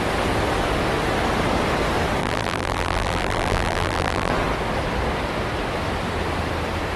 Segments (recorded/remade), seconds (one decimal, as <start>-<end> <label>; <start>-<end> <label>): 0.0-2.2 recorded; 2.2-4.3 remade; 4.3-7.0 recorded